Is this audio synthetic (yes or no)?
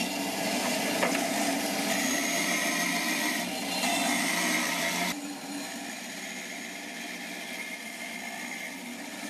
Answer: yes